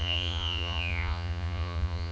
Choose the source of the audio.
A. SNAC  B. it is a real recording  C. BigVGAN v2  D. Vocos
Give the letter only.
D